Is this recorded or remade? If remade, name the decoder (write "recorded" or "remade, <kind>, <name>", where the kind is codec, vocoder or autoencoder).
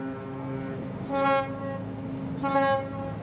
recorded